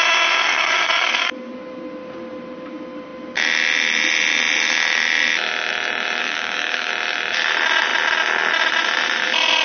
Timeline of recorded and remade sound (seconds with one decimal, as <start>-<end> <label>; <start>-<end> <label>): 0.0-0.4 recorded; 0.4-1.5 remade; 1.5-6.2 recorded; 6.2-6.9 remade; 6.9-9.6 recorded